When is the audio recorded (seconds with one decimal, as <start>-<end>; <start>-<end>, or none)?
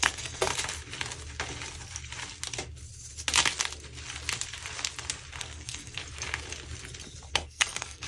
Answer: 0.5-5.4; 6.0-7.3